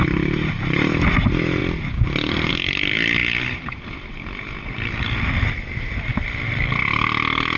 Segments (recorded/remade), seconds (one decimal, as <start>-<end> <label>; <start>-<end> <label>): 0.0-7.6 recorded